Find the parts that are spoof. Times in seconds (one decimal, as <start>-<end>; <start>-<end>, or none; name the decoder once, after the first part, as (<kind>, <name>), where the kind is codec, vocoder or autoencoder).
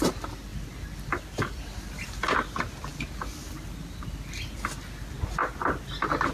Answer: none